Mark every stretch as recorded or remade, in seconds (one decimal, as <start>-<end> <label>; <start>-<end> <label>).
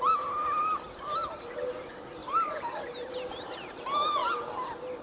0.0-2.2 recorded; 2.2-4.5 remade; 4.5-5.0 recorded